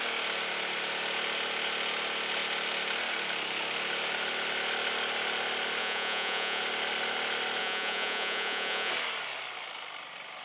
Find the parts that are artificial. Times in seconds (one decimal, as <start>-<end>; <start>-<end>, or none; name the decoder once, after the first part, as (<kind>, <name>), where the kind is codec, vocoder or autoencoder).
5.8-6.6 (vocoder, Vocos); 7.6-8.9